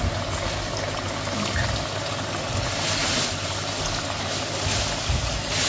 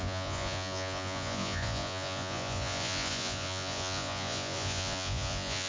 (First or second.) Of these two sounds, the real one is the first